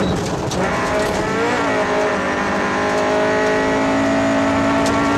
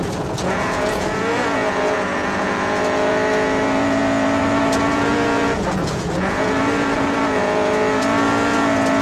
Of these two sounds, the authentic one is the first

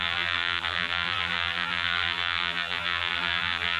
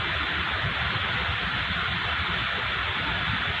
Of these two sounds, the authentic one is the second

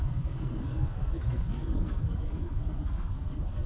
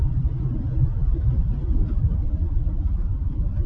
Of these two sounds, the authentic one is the second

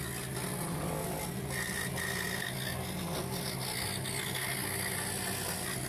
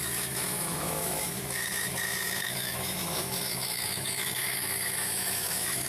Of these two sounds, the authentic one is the first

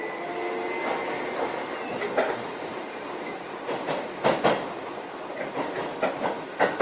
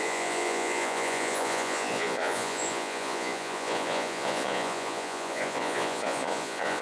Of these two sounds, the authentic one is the first